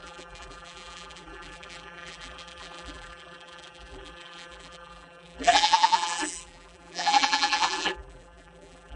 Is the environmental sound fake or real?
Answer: fake